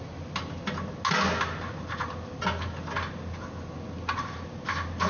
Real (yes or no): yes